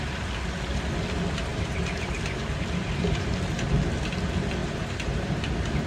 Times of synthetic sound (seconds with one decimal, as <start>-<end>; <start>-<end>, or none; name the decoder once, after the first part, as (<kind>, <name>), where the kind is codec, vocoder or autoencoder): 1.5-2.1 (vocoder, BigVGAN v2); 2.8-3.3; 4.6-5.4

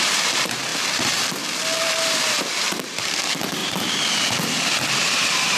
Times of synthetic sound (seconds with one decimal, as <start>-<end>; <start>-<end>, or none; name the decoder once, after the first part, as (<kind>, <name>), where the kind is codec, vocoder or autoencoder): 0.0-0.7 (vocoder, BigVGAN v2); 1.8-3.6; 5.0-5.6

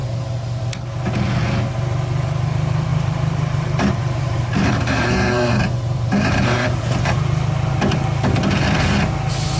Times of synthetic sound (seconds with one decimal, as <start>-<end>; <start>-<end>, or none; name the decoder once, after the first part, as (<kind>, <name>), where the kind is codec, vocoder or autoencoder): 0.0-0.6 (vocoder, BigVGAN v2); 2.9-7.1

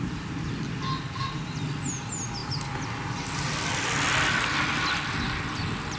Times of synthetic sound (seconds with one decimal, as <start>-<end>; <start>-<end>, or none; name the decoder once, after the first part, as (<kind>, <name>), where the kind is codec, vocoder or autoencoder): none

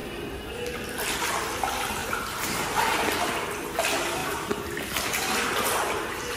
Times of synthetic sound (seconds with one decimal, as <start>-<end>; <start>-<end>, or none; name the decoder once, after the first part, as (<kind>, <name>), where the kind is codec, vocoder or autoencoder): 2.0-2.7 (vocoder, BigVGAN v2); 4.2-4.8

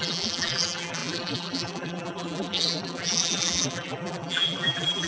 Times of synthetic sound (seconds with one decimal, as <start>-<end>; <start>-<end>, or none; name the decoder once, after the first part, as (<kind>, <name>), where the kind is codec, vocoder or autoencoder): 0.0-5.1 (vocoder, BigVGAN v2)

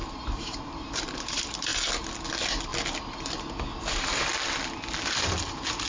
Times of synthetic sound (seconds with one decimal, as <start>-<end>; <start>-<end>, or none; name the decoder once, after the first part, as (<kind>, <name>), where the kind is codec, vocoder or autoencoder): 0.0-1.7 (vocoder, BigVGAN v2); 2.3-2.7; 3.9-4.3; 5.4-5.9